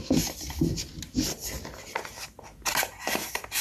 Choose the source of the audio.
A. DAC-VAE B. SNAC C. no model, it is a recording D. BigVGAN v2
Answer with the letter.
C